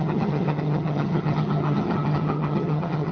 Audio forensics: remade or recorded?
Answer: remade